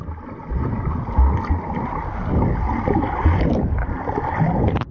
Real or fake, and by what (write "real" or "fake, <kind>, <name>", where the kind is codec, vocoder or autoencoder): real